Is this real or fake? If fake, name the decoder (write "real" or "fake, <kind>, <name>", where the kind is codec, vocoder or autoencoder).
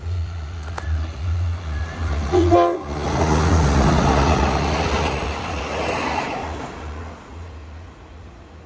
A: fake, vocoder, Vocos